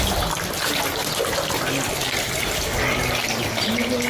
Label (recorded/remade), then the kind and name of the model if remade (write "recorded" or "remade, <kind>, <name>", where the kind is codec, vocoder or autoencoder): recorded